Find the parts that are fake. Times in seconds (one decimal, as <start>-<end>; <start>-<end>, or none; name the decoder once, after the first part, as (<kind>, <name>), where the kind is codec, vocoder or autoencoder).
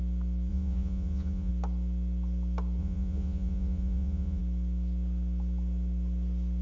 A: 0.5-1.5 (vocoder, Vocos); 2.8-4.4